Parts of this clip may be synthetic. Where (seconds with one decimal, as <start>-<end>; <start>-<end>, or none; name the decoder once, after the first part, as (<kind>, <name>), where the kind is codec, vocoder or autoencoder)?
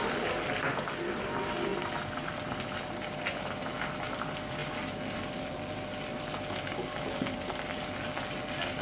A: none